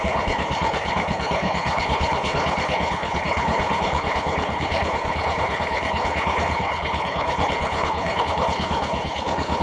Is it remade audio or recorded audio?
remade